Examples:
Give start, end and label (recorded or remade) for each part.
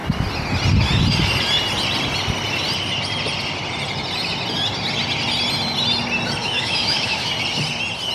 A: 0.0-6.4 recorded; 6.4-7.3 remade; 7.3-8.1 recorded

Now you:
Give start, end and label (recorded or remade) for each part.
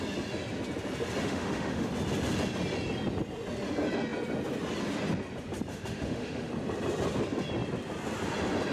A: 0.0-1.2 recorded; 1.2-1.9 remade; 1.9-5.7 recorded; 5.7-6.5 remade; 6.5-8.7 recorded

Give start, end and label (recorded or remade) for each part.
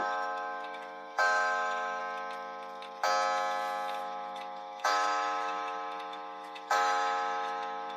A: 0.0-2.0 remade; 2.0-4.0 recorded; 4.0-8.0 remade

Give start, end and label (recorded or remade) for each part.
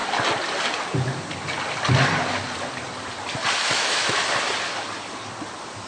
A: 0.0-3.6 recorded; 3.6-4.2 remade; 4.2-5.9 recorded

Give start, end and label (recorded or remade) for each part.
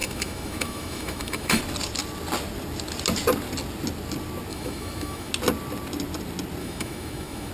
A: 0.0-1.6 remade; 1.6-4.5 recorded; 4.5-5.3 remade; 5.3-6.6 recorded; 6.6-7.5 remade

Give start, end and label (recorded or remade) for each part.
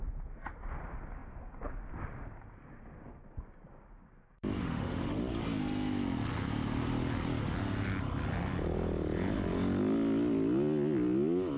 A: 0.0-4.6 recorded; 4.6-5.2 remade; 5.2-11.6 recorded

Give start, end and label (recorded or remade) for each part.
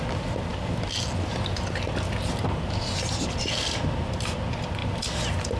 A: 0.0-5.6 recorded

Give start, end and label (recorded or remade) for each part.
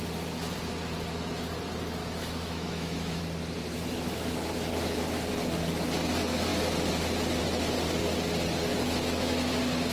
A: 0.0-2.0 recorded; 2.0-3.2 remade; 3.2-8.7 recorded; 8.7-9.5 remade; 9.5-9.9 recorded